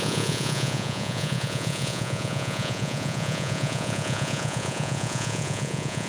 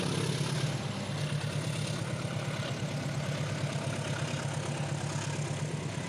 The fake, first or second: first